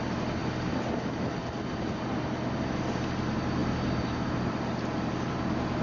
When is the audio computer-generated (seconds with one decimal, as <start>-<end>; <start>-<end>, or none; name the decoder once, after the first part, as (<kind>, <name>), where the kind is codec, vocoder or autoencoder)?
none